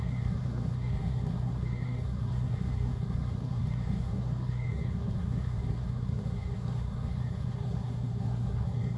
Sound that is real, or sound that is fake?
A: fake